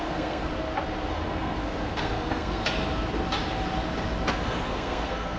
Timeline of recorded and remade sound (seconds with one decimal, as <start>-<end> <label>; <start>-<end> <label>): 0.0-0.5 remade; 0.5-1.1 recorded; 1.1-2.6 remade; 2.6-4.3 recorded; 4.3-5.4 remade